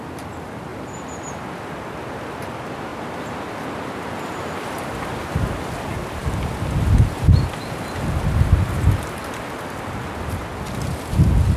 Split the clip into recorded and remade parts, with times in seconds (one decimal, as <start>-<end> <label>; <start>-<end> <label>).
0.0-11.6 recorded